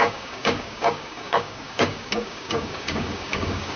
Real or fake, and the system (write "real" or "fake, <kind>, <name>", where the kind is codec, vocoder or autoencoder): fake, codec, DAC